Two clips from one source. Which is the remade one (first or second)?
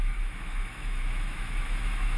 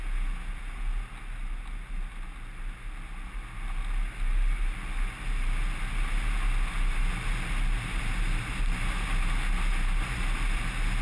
first